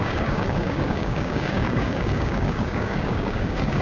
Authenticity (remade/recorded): remade